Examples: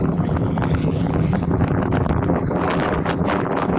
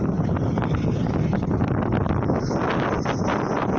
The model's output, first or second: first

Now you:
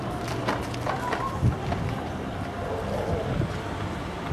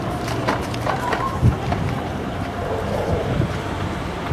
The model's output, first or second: second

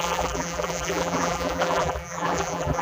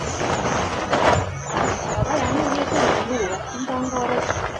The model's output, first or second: first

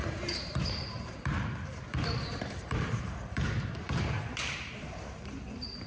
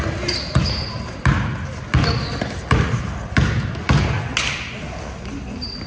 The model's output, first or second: first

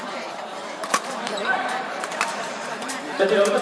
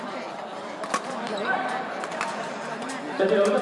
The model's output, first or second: first